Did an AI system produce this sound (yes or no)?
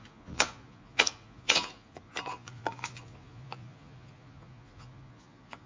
yes